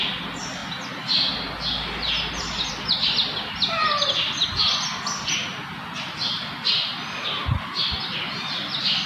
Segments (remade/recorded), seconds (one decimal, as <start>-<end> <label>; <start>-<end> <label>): 0.0-9.1 recorded